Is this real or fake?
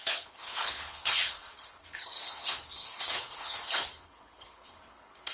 fake